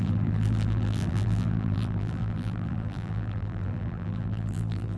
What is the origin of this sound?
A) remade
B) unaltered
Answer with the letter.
A